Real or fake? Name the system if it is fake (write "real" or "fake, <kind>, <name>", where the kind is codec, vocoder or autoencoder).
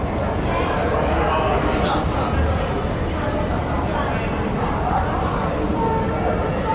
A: real